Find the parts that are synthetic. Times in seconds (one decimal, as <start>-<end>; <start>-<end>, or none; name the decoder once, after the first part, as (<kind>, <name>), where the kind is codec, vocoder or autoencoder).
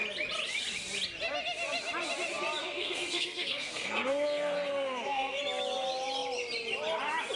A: 2.6-5.4 (codec, SNAC)